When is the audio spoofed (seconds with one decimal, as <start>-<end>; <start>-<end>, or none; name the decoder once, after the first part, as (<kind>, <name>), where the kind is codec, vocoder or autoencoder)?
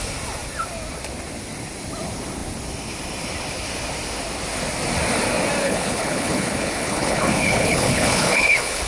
5.6-8.9 (codec, HILCodec)